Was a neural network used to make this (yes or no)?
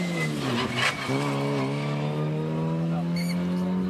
no